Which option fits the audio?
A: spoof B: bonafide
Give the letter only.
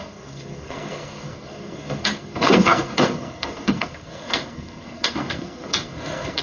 A